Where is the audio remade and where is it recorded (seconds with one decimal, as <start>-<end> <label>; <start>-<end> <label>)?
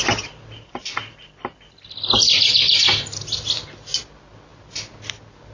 0.0-5.5 recorded